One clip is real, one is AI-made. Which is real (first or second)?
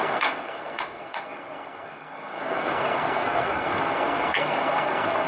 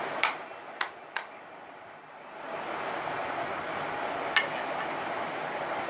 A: second